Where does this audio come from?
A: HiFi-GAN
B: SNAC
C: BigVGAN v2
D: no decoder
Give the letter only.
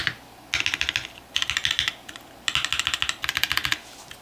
D